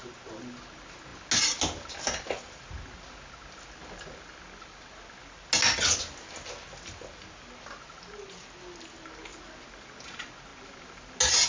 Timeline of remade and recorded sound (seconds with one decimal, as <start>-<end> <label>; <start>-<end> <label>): 0.0-11.5 recorded